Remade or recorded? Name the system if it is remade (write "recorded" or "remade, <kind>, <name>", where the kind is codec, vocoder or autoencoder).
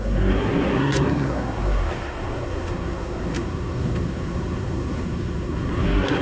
remade, codec, SNAC